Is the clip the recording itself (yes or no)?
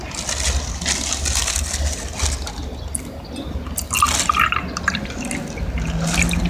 yes